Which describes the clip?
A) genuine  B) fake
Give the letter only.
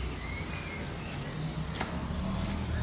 A